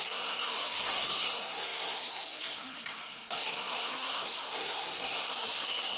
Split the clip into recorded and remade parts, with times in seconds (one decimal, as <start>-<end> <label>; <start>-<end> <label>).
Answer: 0.0-6.0 remade